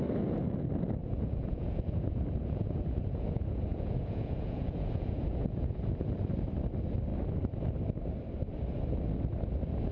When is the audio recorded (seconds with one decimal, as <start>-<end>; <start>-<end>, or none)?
0.0-1.0; 5.8-9.9

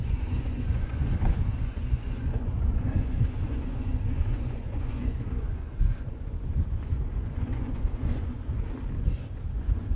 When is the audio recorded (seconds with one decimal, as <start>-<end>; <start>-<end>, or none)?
8.5-9.0

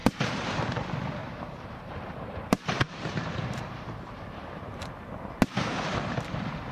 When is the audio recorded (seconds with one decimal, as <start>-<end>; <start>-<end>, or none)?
0.7-1.2; 4.8-6.7

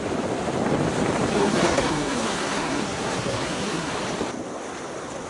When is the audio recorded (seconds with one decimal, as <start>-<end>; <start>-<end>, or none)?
0.0-1.3; 3.9-5.3

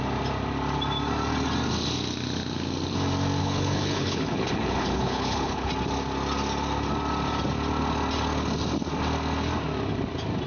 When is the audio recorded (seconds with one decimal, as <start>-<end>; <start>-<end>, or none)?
0.0-3.4; 5.7-10.5

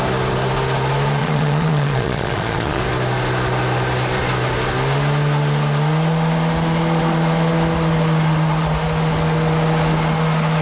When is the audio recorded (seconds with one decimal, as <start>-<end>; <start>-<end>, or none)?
0.0-1.2; 2.8-10.6

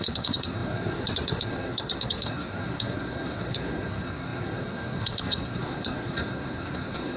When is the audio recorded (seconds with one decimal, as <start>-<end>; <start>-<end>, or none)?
none

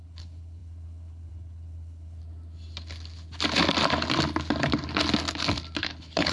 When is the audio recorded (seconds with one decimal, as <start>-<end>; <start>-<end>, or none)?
2.2-5.8